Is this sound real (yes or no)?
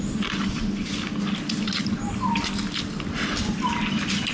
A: yes